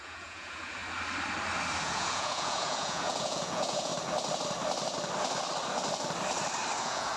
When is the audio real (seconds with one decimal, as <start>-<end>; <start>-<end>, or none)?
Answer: 0.8-1.8; 3.9-6.8